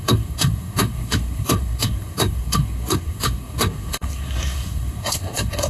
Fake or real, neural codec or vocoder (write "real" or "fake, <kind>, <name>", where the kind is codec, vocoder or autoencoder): fake, codec, SNAC